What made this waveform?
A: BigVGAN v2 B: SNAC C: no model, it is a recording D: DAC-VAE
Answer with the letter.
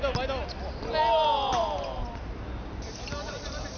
C